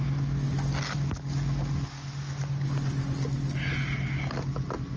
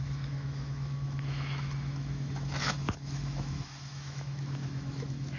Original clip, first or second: first